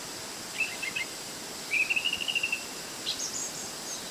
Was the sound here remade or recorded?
recorded